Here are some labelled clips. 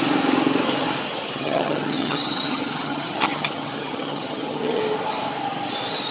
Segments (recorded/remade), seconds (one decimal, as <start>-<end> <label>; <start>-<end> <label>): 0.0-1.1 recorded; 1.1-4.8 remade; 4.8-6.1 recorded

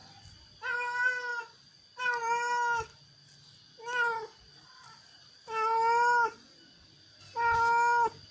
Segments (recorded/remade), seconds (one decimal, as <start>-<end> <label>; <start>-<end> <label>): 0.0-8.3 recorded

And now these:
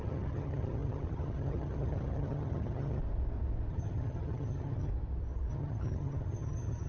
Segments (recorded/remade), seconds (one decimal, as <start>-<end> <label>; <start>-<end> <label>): 0.0-3.0 remade; 3.0-3.7 recorded; 3.7-4.9 remade; 4.9-5.5 recorded; 5.5-6.9 remade